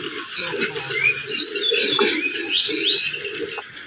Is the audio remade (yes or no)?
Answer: no